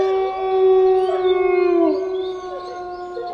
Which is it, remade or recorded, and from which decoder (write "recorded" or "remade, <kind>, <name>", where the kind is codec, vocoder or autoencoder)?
recorded